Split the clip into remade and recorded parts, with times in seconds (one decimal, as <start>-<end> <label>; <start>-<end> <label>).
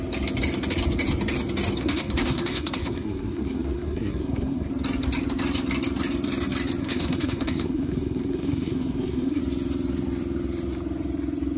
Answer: 0.0-1.8 recorded; 1.8-4.7 remade; 4.7-6.8 recorded; 6.8-9.4 remade; 9.4-11.6 recorded